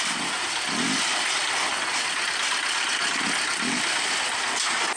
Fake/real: real